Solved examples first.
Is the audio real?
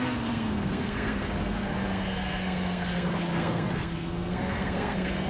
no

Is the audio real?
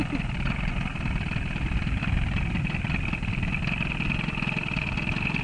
yes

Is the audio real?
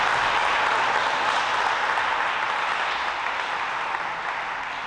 yes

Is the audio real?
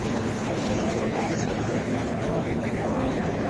no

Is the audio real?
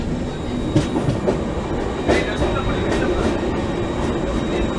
yes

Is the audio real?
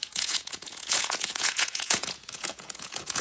no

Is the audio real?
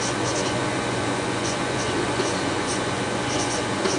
no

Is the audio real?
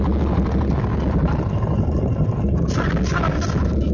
yes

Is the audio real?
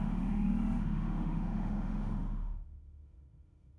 no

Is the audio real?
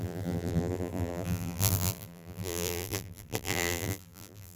no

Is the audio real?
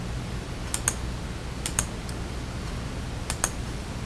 yes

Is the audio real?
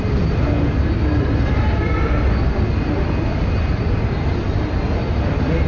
yes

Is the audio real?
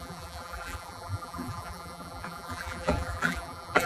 no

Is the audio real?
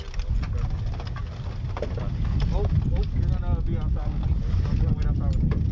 yes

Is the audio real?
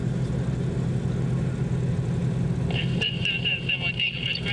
yes